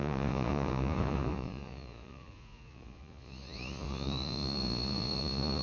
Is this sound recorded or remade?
remade